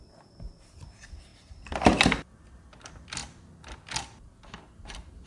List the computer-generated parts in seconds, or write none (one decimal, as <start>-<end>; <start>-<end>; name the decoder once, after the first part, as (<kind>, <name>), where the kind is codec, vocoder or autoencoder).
none